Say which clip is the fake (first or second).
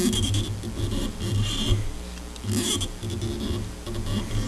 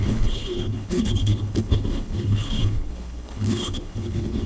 second